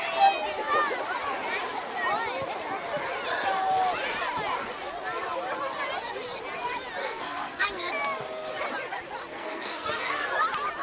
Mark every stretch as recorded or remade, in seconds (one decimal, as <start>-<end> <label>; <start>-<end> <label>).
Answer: 0.0-7.0 recorded; 7.0-7.9 remade; 7.9-9.3 recorded; 9.3-10.3 remade; 10.3-10.8 recorded

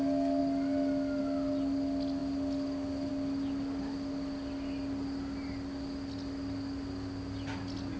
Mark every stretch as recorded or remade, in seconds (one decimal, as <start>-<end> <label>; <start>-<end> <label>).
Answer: 0.0-8.0 recorded

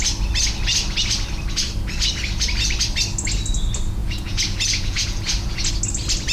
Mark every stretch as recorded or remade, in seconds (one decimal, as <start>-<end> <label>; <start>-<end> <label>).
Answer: 0.0-4.0 recorded; 4.0-5.7 remade; 5.7-6.3 recorded